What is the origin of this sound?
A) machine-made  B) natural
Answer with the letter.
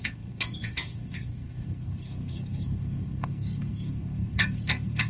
A